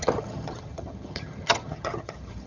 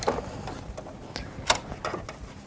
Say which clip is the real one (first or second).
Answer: second